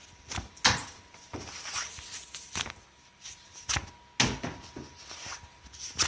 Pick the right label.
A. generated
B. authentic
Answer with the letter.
B